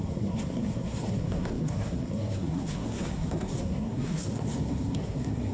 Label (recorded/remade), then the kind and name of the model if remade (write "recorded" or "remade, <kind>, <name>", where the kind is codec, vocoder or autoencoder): remade, codec, SNAC